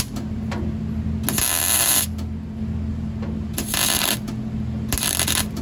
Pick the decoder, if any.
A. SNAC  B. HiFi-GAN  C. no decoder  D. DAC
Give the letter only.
C